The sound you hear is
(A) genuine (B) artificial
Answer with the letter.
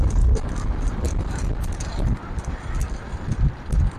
A